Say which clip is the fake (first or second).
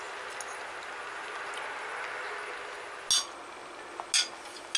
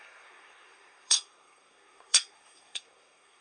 second